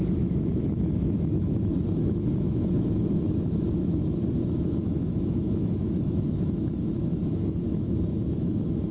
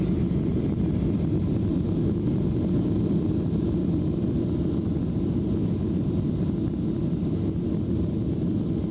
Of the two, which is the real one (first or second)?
second